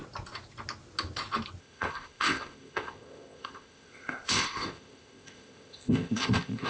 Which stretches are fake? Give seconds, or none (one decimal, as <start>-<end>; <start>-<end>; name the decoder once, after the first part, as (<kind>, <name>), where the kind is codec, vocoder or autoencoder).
1.6-6.7 (codec, ZipCodec)